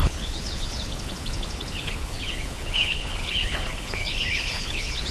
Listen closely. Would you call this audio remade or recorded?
remade